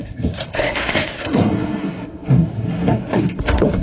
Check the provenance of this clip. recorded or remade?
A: remade